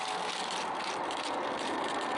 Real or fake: real